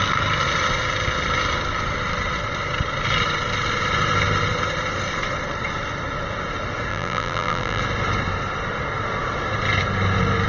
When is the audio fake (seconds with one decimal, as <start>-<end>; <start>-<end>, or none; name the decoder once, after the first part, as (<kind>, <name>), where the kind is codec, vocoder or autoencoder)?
6.9-7.8 (vocoder, BigVGAN v2)